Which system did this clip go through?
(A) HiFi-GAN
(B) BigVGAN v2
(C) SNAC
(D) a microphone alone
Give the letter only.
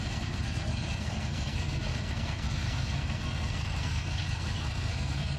C